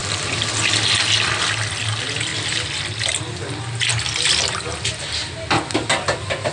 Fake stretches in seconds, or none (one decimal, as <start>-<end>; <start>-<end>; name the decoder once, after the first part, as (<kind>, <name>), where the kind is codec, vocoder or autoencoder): 1.8-2.3 (vocoder, BigVGAN v2); 6.1-6.5